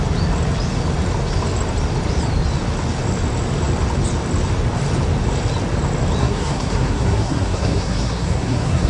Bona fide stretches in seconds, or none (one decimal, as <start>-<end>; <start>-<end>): 0.0-6.2

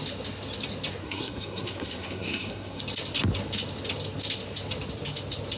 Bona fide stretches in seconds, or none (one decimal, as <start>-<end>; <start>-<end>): 0.0-1.0; 2.8-5.6

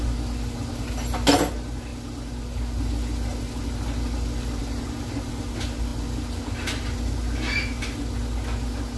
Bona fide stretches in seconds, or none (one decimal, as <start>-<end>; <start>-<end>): 0.0-9.0

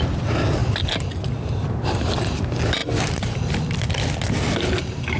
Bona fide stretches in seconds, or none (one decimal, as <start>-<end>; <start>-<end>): 0.0-5.2

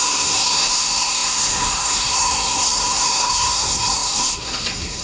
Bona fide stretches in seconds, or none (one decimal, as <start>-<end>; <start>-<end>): none